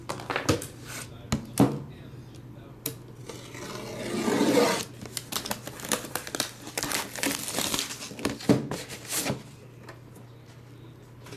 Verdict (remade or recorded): recorded